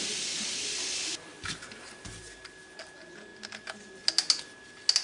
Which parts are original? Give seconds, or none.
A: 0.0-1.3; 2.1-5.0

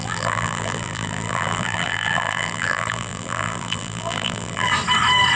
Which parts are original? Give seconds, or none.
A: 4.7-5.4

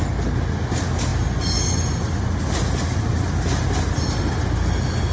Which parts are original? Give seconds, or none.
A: 0.0-1.1; 4.2-5.1

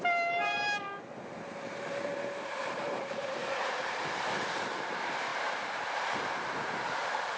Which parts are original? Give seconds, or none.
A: 2.1-2.6; 5.3-5.9

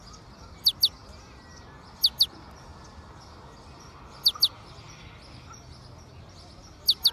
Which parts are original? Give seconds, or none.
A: 0.0-7.1

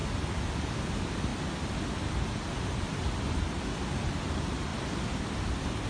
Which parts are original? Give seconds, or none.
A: 0.0-0.8; 1.3-3.3; 4.7-5.2